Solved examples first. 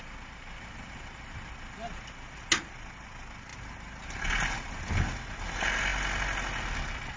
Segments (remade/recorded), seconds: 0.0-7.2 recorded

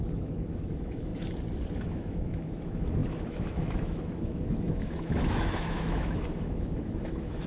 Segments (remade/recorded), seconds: 0.0-1.1 remade; 1.1-1.8 recorded; 1.8-7.5 remade

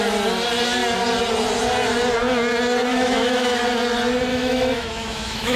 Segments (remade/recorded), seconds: 0.0-2.9 recorded; 2.9-3.6 remade; 3.6-4.3 recorded; 4.3-5.6 remade

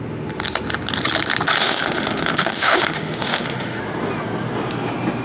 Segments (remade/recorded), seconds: 0.0-1.6 recorded; 1.6-3.8 remade; 3.8-5.2 recorded

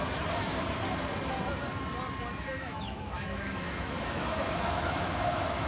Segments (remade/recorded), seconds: 0.0-2.3 recorded; 2.3-5.7 remade

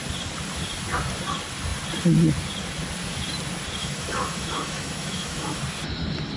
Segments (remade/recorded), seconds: 0.0-3.8 recorded; 3.8-5.6 remade; 5.6-6.4 recorded